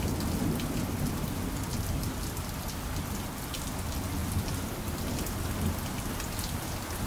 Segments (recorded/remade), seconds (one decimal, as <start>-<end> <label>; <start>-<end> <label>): 0.0-1.7 recorded; 1.7-2.6 remade; 2.6-4.2 recorded; 4.2-5.0 remade; 5.0-7.1 recorded